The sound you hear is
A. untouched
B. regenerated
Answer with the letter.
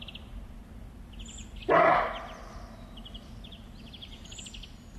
A